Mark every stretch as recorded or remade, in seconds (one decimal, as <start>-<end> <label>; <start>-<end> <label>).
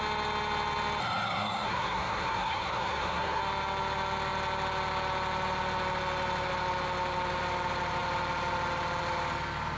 0.0-1.0 recorded; 1.0-3.4 remade; 3.4-9.8 recorded